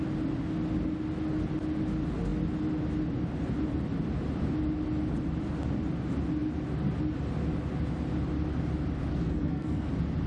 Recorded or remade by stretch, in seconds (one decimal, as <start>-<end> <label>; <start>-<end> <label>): 0.0-9.1 recorded; 9.1-9.9 remade; 9.9-10.3 recorded